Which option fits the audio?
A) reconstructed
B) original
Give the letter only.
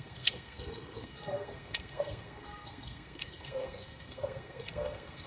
A